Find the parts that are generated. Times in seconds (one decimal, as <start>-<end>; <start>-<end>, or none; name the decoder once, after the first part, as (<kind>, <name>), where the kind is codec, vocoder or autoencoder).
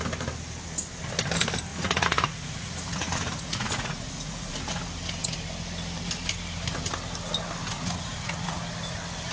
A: 1.7-4.6 (vocoder, Vocos); 7.7-8.6